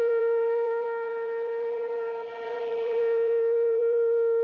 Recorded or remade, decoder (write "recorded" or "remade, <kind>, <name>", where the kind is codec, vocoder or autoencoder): remade, vocoder, BigVGAN v2